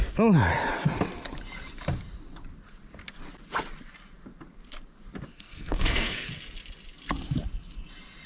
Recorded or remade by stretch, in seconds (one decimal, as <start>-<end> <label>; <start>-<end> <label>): 0.0-5.3 recorded; 5.3-6.3 remade; 6.3-8.3 recorded